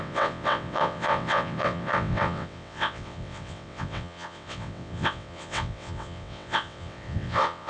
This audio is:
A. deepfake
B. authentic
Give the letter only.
A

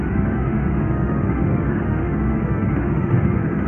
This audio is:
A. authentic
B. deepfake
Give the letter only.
B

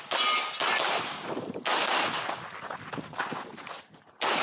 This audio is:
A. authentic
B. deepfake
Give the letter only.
A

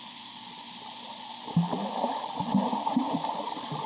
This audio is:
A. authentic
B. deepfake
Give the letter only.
A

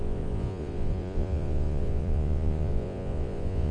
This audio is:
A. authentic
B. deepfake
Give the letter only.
B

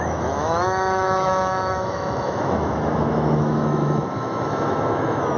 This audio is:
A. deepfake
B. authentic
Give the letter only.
A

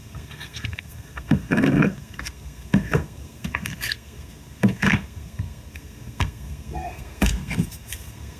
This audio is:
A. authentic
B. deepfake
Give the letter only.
B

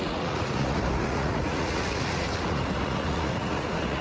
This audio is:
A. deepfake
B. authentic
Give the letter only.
A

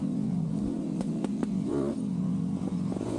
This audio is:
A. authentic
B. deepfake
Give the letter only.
B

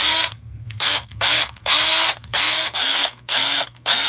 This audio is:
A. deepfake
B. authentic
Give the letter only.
A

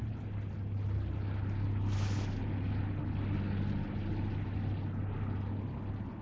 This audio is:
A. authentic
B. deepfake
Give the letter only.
A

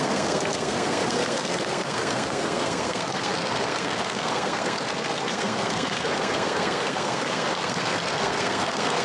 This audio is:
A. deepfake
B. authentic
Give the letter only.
A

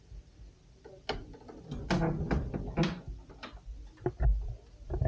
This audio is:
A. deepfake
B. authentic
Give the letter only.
B